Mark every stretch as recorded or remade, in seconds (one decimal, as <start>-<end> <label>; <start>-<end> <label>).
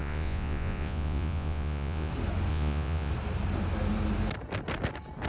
0.0-2.1 remade; 2.1-2.5 recorded; 2.5-3.1 remade; 3.1-5.3 recorded